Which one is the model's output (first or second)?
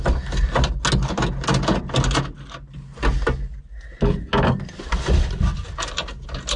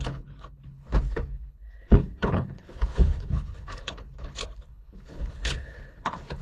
second